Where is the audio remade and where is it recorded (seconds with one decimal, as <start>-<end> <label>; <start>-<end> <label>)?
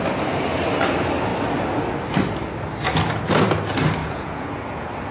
0.0-4.0 recorded; 4.0-4.6 remade; 4.6-5.1 recorded